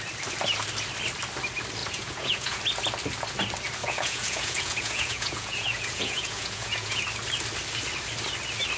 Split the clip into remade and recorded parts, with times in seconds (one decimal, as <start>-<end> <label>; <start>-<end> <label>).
0.0-1.8 recorded; 1.8-2.6 remade; 2.6-3.8 recorded; 3.8-7.0 remade; 7.0-8.8 recorded

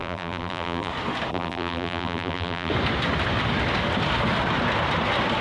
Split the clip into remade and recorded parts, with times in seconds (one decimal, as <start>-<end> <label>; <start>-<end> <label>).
0.0-0.9 remade; 0.9-1.3 recorded; 1.3-2.7 remade; 2.7-5.4 recorded

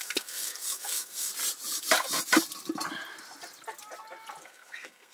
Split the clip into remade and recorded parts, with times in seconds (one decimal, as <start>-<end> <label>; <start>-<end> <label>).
0.0-1.3 remade; 1.3-4.4 recorded; 4.4-5.1 remade

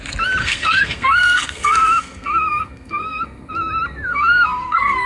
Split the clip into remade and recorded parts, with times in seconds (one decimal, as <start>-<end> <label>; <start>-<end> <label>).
0.0-0.4 recorded; 0.4-3.5 remade; 3.5-4.1 recorded; 4.1-5.1 remade

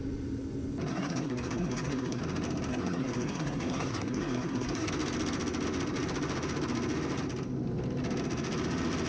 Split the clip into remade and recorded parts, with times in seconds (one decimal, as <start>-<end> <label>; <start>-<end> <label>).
0.0-0.9 recorded; 0.9-2.2 remade; 2.2-2.7 recorded; 2.7-4.9 remade; 4.9-9.1 recorded

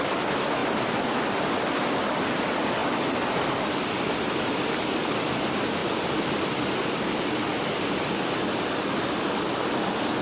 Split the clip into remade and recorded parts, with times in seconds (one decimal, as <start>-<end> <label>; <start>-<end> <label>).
0.0-10.2 recorded

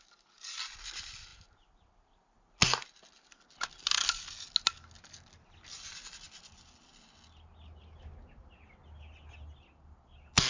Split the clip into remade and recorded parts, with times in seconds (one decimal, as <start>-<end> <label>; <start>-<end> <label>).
0.0-10.5 recorded

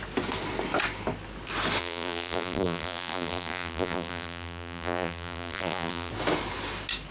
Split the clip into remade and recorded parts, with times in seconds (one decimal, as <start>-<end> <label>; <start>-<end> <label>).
0.0-1.8 recorded; 1.8-6.1 remade; 6.1-7.1 recorded